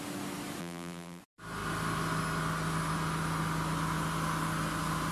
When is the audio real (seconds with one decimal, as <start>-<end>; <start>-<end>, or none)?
0.0-0.6; 1.2-5.1